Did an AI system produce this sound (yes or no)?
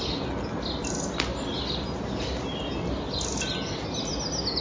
no